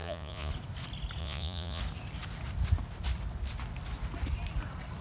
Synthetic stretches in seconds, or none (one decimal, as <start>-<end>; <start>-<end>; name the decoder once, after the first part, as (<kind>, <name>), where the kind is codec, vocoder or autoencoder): 0.0-0.5 (vocoder, Vocos); 1.2-1.8